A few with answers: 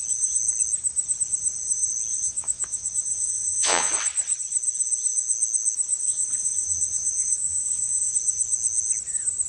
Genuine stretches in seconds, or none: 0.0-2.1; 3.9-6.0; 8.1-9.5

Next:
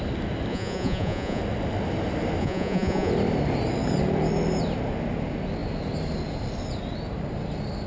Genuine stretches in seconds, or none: 0.0-0.5; 1.4-2.4; 3.1-7.9

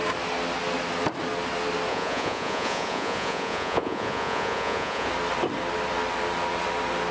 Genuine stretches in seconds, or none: 0.0-1.9; 5.1-7.1

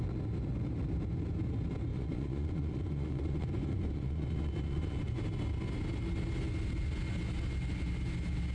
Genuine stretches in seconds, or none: 0.0-1.9; 5.2-8.5